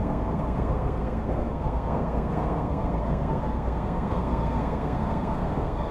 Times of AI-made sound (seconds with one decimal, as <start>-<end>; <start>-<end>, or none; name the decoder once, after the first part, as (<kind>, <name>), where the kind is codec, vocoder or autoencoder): 0.0-5.9 (codec, SNAC)